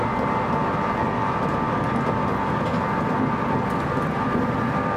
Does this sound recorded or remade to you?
remade